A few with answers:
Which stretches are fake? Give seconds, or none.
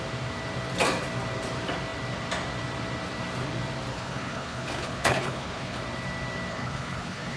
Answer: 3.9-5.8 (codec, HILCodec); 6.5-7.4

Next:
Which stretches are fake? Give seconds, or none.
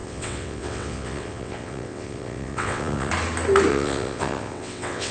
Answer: 0.0-3.1 (vocoder, WaveNeXt); 3.7-5.1